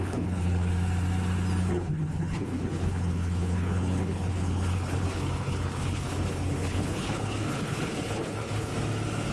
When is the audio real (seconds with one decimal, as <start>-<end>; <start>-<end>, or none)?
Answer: 0.7-1.6; 8.7-9.3